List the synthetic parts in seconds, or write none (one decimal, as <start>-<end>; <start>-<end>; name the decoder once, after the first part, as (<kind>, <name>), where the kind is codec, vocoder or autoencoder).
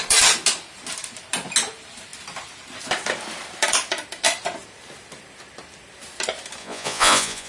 6.6-7.5 (vocoder, Vocos)